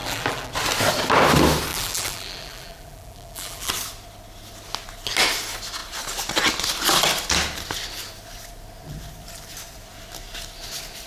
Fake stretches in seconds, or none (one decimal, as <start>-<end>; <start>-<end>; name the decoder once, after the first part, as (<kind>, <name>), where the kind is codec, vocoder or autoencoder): 0.0-0.5 (vocoder, BigVGAN v2); 1.7-3.7